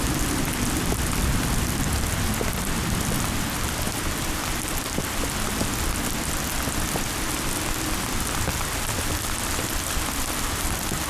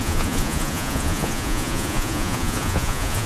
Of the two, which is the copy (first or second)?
second